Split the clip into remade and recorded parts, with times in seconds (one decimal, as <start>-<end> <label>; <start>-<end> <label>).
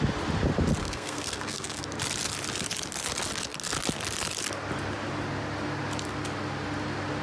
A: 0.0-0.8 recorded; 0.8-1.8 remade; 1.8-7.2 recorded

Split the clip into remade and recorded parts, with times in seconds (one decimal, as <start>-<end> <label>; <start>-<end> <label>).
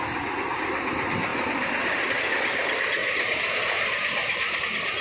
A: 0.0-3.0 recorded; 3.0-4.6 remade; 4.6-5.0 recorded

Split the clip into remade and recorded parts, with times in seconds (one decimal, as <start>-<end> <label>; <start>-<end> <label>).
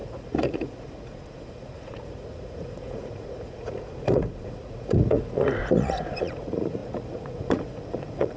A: 0.0-8.4 remade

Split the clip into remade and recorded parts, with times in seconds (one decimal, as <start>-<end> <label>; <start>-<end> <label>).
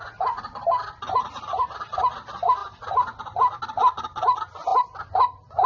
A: 0.0-5.7 recorded